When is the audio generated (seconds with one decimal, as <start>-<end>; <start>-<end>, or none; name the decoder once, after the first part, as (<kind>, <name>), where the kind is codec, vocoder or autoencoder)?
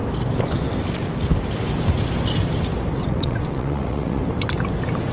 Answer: 3.0-4.2 (vocoder, WaveNeXt)